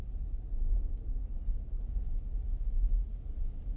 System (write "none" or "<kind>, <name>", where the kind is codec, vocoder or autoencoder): none